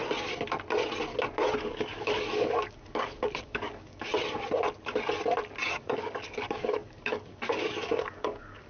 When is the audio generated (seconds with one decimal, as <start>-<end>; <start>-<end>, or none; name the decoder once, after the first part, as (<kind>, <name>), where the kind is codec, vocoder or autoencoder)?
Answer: 1.6-4.1 (codec, DAC); 5.7-8.7